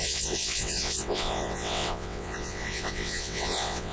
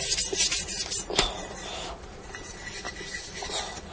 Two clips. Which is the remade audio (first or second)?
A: first